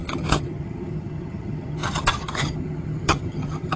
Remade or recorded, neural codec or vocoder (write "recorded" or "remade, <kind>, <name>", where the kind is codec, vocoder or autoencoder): remade, vocoder, HiFi-GAN